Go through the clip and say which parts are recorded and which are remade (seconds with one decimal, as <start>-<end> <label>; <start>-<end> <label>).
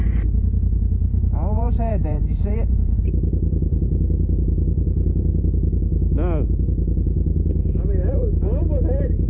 0.0-1.1 recorded; 1.1-3.0 remade; 3.0-9.3 recorded